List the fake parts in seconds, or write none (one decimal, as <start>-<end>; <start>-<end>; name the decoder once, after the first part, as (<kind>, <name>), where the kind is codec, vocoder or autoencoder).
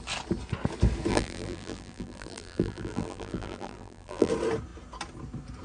1.1-4.3 (vocoder, BigVGAN v2)